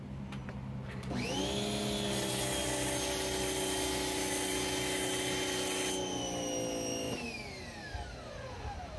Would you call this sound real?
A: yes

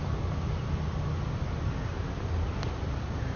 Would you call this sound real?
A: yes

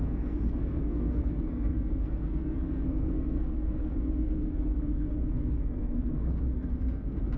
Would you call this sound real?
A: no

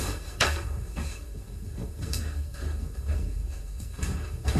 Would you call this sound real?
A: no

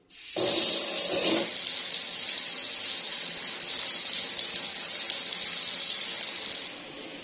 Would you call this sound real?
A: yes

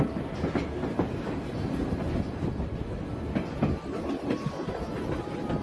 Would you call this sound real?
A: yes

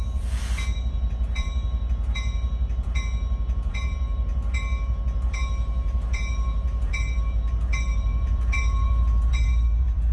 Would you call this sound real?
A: no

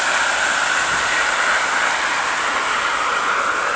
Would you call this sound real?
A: yes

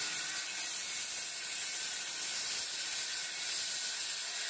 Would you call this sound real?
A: yes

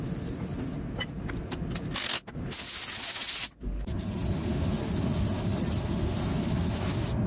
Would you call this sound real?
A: yes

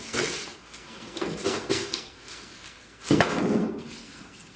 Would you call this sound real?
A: no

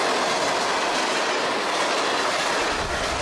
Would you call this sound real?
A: yes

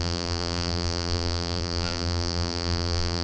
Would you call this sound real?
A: no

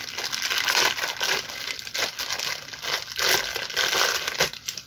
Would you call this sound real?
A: yes